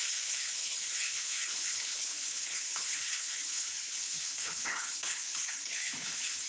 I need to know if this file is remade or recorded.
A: remade